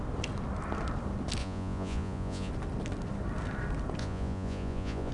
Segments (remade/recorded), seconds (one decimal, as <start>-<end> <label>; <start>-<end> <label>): 0.0-1.4 recorded; 1.4-2.5 remade; 2.5-4.0 recorded; 4.0-5.1 remade